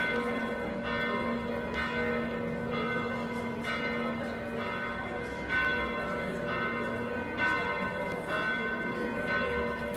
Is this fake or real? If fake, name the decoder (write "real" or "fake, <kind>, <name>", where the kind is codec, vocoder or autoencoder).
real